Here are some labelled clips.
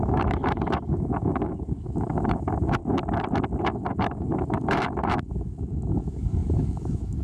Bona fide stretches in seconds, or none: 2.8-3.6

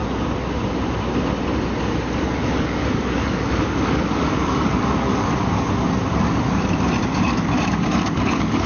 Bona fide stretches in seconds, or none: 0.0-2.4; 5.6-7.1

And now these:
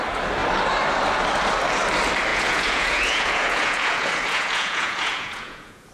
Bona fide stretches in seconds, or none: 0.0-2.3

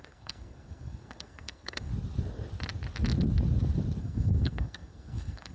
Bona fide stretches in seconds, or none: 1.9-4.0

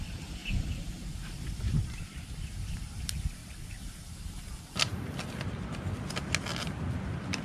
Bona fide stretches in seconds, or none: 0.0-0.4; 3.0-3.4; 4.4-7.4